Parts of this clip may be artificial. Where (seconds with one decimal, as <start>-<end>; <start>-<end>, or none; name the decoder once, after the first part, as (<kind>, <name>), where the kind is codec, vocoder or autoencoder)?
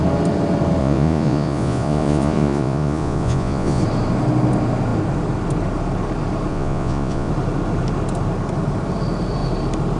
0.8-3.8 (vocoder, Vocos); 6.5-7.3